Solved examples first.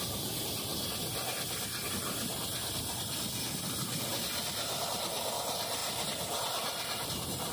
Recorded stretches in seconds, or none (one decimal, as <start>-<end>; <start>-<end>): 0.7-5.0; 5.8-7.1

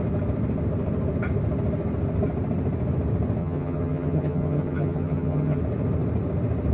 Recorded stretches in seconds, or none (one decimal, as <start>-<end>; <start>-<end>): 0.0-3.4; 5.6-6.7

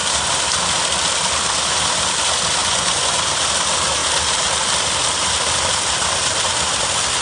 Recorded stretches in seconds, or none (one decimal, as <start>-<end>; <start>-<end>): 0.0-2.6; 3.2-7.2

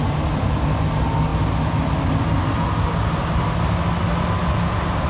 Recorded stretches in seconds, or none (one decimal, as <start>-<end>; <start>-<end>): 0.0-5.1